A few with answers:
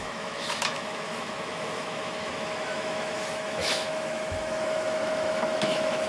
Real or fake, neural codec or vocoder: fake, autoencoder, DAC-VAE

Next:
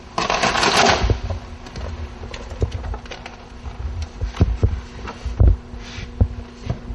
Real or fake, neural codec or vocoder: real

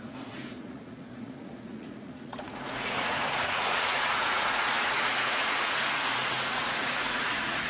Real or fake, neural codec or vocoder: fake, vocoder, Vocos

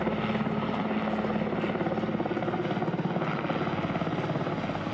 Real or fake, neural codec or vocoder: real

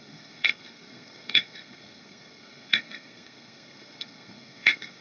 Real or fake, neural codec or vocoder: fake, codec, SNAC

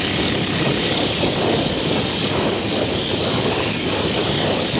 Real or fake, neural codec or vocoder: fake, codec, DAC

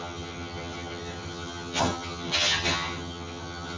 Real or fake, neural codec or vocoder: fake, vocoder, HiFi-GAN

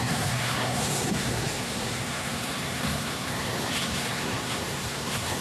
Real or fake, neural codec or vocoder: fake, codec, SNAC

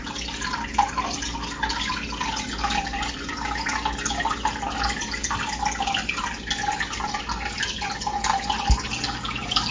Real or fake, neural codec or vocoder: real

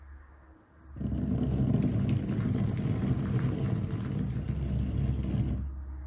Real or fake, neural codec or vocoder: real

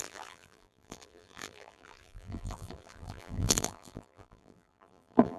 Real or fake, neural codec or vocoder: fake, vocoder, BigVGAN v2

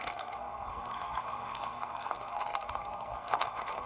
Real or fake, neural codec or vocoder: fake, codec, SNAC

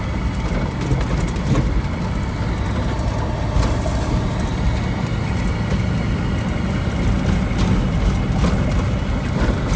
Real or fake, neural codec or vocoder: real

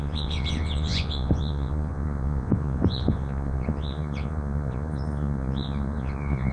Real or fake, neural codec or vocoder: fake, vocoder, Vocos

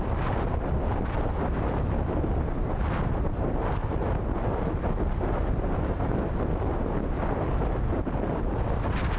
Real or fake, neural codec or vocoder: real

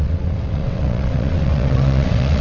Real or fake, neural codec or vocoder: fake, vocoder, WaveNeXt